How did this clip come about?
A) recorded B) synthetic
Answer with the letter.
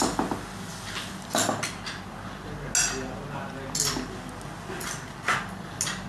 A